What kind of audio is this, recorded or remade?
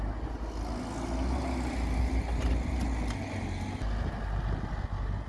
recorded